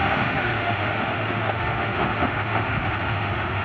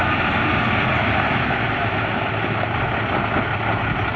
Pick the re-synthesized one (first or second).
first